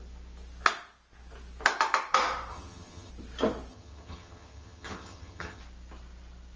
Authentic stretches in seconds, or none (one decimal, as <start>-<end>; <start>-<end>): 0.0-2.5; 3.1-3.7; 5.6-6.6